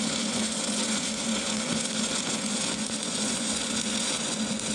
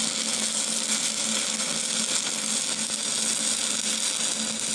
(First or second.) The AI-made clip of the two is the first